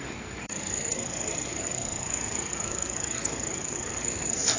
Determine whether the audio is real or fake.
fake